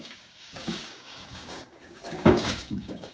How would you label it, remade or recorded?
remade